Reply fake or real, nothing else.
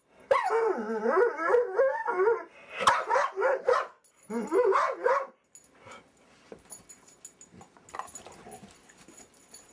real